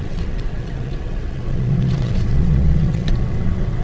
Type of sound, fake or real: fake